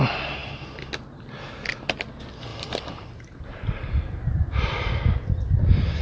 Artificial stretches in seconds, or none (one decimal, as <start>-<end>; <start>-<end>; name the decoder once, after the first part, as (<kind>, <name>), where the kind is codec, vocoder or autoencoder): 0.4-0.9 (vocoder, BigVGAN v2); 2.5-4.9